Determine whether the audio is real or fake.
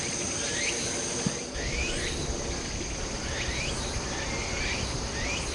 real